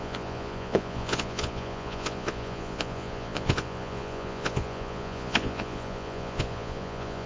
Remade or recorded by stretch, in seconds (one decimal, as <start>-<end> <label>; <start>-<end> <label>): 0.0-7.3 remade